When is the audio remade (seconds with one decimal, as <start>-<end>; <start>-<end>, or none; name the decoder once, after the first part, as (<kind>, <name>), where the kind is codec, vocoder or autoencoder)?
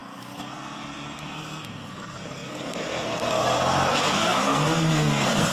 0.0-5.5 (codec, SNAC)